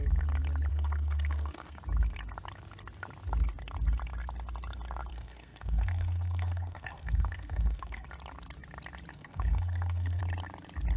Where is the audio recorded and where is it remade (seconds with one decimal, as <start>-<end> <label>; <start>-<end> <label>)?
0.0-0.7 recorded; 0.7-1.8 remade; 1.8-5.1 recorded; 5.1-8.1 remade; 8.1-9.1 recorded; 9.1-10.2 remade; 10.2-11.0 recorded